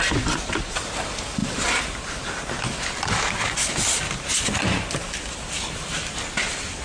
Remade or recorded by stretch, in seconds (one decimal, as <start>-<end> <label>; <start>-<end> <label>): 0.0-6.8 recorded